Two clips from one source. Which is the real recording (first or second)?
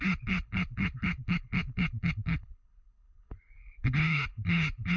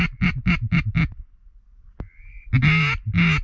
second